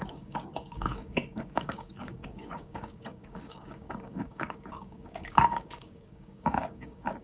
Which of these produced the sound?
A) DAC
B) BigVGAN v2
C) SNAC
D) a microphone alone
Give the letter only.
A